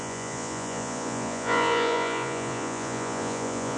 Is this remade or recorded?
remade